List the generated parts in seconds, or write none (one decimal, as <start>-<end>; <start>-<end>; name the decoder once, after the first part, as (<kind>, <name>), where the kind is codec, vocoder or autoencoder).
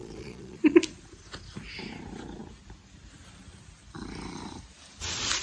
0.0-0.8 (vocoder, Vocos)